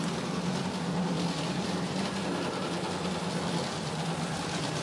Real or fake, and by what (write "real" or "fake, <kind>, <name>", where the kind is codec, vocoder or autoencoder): real